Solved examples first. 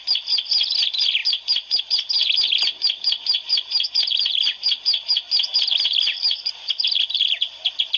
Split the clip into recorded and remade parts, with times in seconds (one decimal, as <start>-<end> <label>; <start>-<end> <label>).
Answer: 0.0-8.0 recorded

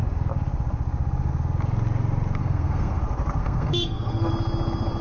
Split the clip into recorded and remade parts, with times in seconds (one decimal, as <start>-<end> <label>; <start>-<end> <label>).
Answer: 0.0-2.4 recorded; 2.4-3.0 remade; 3.0-3.4 recorded; 3.4-4.3 remade; 4.3-5.0 recorded

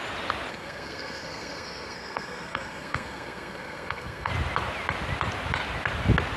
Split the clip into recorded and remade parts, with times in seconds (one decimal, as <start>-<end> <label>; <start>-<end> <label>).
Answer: 0.0-0.5 recorded; 0.5-4.3 remade; 4.3-6.4 recorded

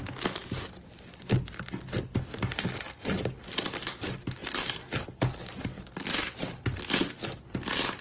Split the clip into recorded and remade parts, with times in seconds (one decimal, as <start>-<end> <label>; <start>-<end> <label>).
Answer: 0.0-8.0 recorded